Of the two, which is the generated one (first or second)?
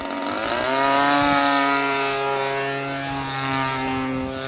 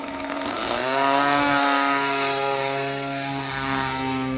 second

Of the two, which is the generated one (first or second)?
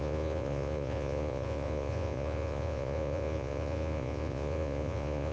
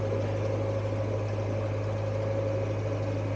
first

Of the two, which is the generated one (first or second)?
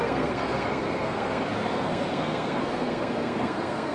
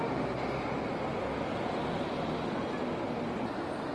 first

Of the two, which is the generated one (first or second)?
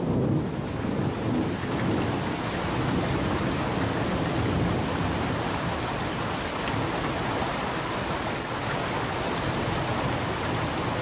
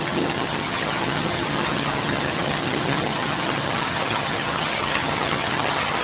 second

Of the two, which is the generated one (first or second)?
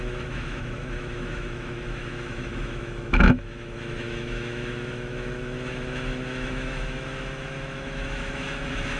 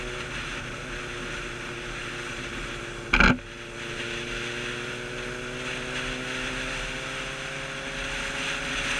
first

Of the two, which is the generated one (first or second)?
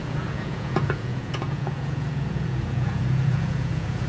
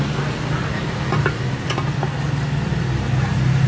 first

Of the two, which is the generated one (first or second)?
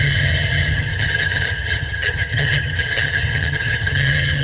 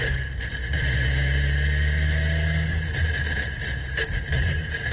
first